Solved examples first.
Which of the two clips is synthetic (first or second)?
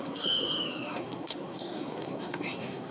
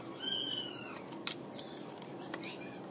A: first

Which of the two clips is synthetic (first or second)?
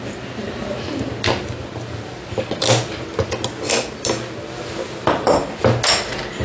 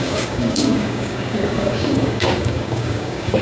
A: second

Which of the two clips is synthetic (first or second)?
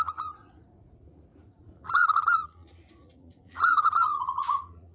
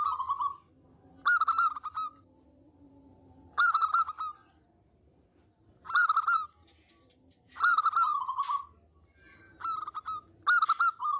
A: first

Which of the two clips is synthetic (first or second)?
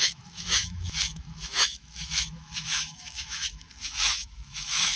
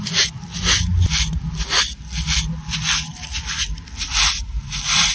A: first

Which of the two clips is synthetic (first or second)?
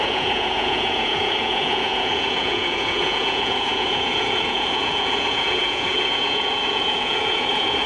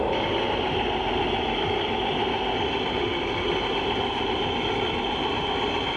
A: first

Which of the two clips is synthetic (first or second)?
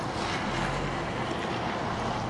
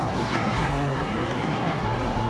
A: second